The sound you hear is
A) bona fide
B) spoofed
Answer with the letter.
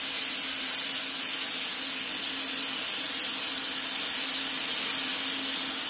A